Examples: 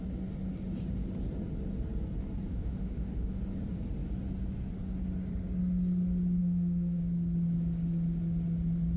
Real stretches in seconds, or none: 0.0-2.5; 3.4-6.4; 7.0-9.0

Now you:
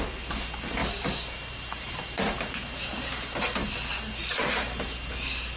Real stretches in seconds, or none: 0.0-5.6

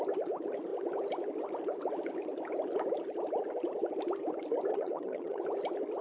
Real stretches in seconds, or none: 0.0-4.7; 5.4-6.0

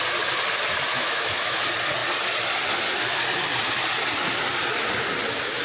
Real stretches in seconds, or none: 0.0-0.9; 1.6-5.6